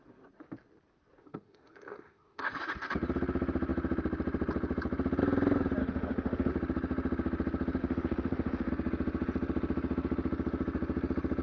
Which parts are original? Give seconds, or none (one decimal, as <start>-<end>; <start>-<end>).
0.0-1.2; 2.6-5.8; 6.5-7.8; 8.7-11.4